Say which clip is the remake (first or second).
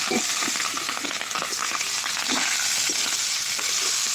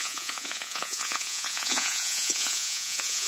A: second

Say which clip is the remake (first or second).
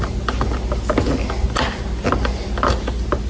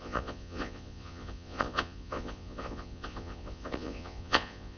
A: second